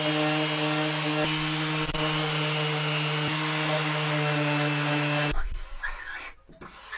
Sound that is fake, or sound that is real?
real